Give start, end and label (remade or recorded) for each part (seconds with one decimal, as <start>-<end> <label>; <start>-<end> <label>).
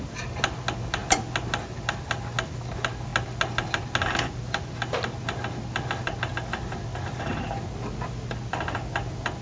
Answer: 0.0-9.4 recorded